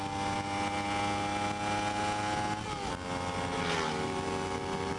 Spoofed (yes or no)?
no